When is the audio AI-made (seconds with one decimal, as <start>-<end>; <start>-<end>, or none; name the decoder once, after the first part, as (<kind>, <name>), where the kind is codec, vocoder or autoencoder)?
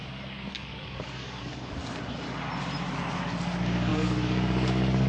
0.0-1.8 (codec, DAC); 2.9-5.1